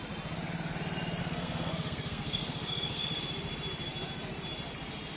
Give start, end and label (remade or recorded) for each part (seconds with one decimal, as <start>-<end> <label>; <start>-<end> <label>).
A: 0.0-1.2 recorded; 1.2-3.2 remade; 3.2-5.2 recorded